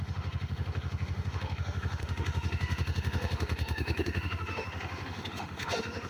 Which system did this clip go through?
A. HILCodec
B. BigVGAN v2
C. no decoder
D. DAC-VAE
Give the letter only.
D